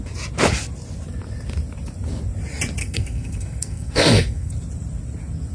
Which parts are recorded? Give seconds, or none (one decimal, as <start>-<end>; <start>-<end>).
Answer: 0.0-2.8; 4.5-5.5